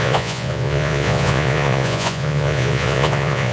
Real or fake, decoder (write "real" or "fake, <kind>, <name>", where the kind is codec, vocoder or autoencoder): fake, vocoder, Vocos